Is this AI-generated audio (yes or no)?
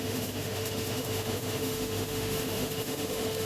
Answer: yes